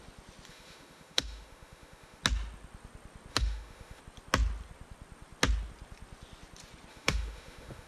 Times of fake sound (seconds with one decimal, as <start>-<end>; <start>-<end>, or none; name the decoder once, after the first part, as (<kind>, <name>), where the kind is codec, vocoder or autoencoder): 0.5-2.2 (autoencoder, DAC-VAE); 3.3-4.0; 6.9-7.9